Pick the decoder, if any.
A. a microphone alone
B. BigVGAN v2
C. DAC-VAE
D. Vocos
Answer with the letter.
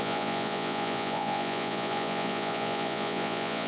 D